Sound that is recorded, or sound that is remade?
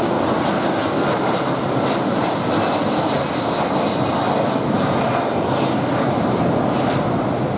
recorded